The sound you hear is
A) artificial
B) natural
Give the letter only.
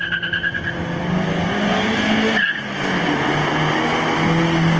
B